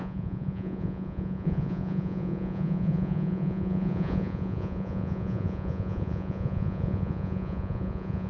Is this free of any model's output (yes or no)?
no